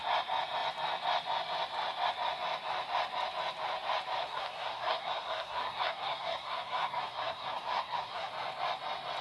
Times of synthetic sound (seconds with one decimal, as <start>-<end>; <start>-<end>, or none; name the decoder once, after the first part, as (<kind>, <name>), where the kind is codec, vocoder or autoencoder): 4.2-8.3 (codec, SNAC)